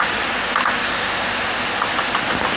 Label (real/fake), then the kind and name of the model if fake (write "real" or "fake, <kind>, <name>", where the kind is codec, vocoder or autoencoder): real